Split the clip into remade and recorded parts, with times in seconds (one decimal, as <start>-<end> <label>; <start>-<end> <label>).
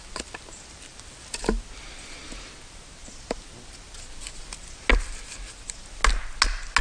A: 0.0-6.8 recorded